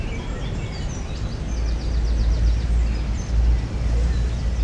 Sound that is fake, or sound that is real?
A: real